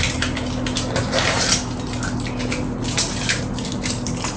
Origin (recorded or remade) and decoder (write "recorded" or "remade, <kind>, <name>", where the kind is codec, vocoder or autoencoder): recorded